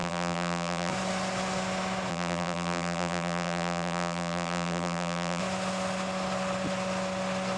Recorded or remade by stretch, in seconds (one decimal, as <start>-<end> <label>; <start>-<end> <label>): 0.0-0.9 remade; 0.9-2.1 recorded; 2.1-5.4 remade; 5.4-7.6 recorded

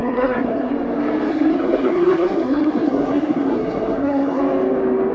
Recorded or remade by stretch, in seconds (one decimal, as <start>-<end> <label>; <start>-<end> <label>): 0.0-0.7 remade; 0.7-1.3 recorded; 1.3-4.4 remade; 4.4-5.1 recorded